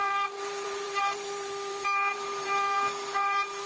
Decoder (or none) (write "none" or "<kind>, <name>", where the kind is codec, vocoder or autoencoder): vocoder, BigVGAN v2